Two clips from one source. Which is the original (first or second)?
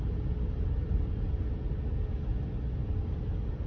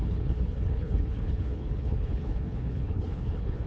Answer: first